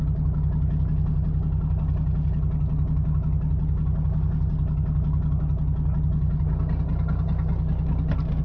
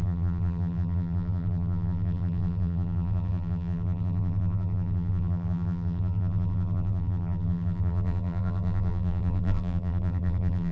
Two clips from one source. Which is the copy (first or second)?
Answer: second